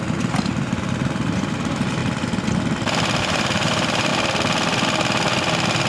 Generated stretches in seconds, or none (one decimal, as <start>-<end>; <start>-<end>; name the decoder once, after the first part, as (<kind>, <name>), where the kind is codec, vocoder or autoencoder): 0.0-2.0 (vocoder, BigVGAN v2); 3.2-4.1